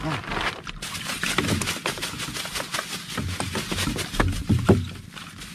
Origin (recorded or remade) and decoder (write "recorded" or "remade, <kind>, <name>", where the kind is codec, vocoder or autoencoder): recorded